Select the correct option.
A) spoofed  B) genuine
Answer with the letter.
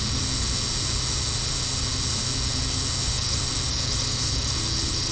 B